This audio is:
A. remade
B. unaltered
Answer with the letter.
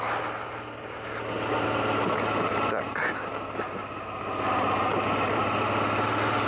B